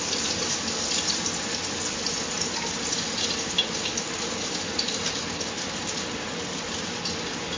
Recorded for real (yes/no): yes